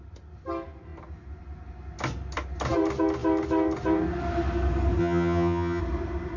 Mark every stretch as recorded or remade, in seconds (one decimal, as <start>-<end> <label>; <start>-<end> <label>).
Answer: 0.0-5.0 recorded; 5.0-5.8 remade; 5.8-6.4 recorded